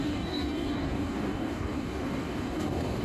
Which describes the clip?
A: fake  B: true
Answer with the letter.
A